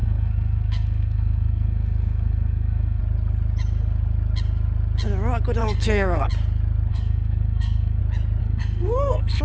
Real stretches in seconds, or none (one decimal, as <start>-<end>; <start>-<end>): 3.0-5.6; 6.3-6.9; 8.0-8.4